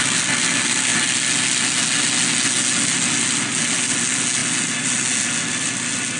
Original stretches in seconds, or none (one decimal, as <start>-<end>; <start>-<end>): 0.0-6.2